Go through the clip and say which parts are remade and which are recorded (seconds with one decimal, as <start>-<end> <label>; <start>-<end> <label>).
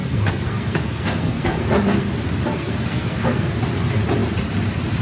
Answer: 0.0-2.1 remade; 2.1-2.5 recorded; 2.5-3.5 remade; 3.5-5.0 recorded